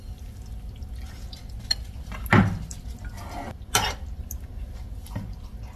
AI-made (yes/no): no